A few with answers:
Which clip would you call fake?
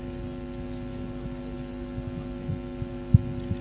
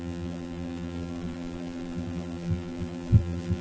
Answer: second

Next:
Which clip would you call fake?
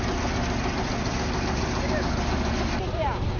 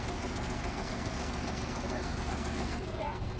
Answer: second